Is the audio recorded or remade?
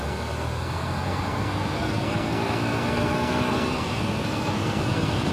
remade